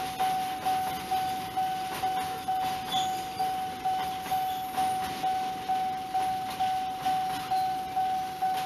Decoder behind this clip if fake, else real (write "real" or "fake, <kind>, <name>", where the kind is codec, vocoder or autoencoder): real